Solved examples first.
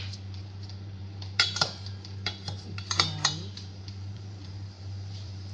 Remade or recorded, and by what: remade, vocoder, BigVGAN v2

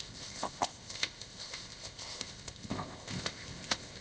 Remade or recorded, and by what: remade, codec, ZipCodec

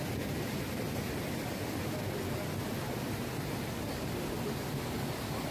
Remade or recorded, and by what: recorded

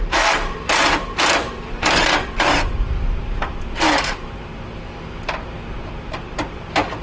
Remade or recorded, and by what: remade, vocoder, BigVGAN v2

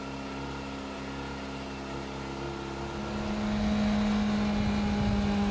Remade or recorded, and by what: recorded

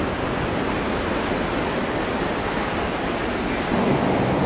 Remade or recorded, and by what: recorded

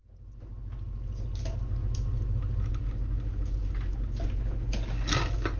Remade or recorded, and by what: recorded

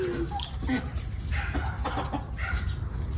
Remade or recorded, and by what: recorded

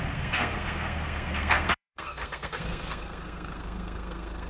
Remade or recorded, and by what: remade, codec, SNAC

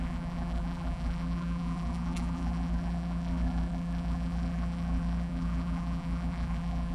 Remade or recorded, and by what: remade, vocoder, BigVGAN v2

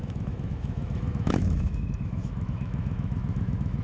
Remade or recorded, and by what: remade, autoencoder, DAC-VAE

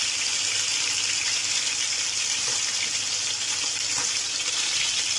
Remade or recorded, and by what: recorded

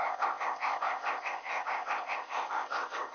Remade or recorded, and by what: remade, codec, ZipCodec